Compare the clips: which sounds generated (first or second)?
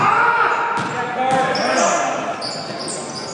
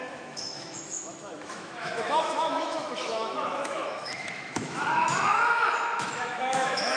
second